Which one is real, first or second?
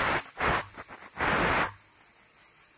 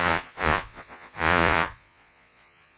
first